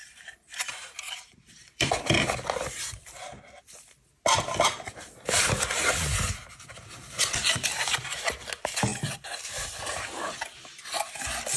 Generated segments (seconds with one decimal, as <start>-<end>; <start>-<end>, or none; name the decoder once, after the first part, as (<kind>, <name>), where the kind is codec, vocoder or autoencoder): 0.0-1.9 (vocoder, BigVGAN v2)